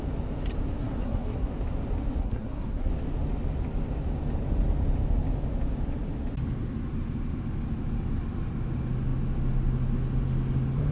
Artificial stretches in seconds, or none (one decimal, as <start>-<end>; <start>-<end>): 0.8-1.5; 2.2-2.9